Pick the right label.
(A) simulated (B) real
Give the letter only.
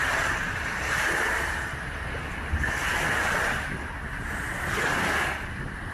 B